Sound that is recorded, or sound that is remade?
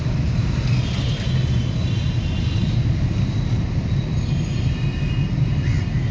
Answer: recorded